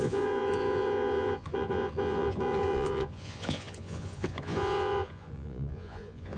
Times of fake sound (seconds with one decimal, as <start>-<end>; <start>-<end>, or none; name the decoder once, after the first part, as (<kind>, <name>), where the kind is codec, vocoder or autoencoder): 0.0-6.4 (vocoder, Vocos)